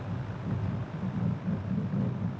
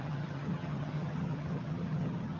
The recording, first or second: first